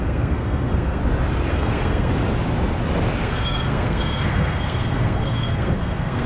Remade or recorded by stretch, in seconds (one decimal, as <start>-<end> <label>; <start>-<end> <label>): 0.0-1.0 remade; 1.0-1.5 recorded; 1.5-2.1 remade; 2.1-3.2 recorded; 3.2-6.3 remade